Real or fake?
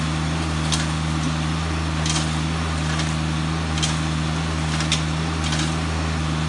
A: real